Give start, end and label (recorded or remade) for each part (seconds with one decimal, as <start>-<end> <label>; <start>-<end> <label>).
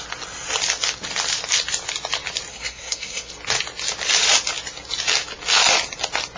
0.0-2.5 recorded; 2.5-3.3 remade; 3.3-6.4 recorded